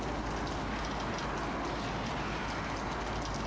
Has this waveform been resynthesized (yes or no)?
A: no